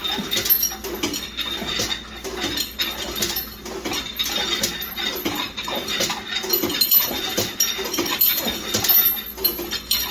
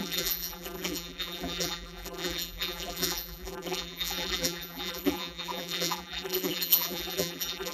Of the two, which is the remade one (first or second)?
second